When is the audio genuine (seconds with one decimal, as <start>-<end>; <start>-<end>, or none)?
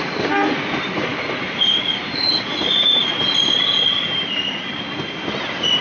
0.0-1.1; 2.0-3.0; 4.0-5.8